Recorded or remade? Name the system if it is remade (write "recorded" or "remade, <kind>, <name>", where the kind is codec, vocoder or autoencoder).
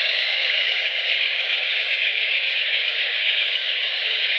remade, codec, DAC